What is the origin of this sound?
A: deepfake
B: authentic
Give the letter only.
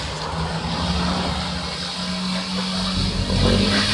B